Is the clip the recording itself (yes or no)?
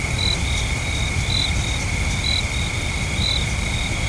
yes